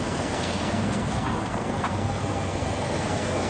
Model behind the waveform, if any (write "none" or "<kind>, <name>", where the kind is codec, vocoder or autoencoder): codec, SNAC